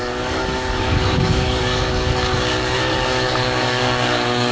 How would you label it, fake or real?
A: fake